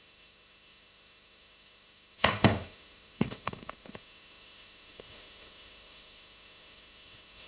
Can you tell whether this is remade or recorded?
remade